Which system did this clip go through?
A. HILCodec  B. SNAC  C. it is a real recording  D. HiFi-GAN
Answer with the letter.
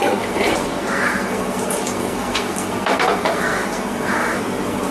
B